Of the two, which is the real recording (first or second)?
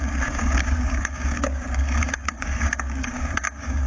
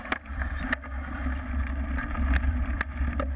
second